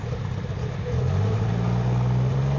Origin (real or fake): real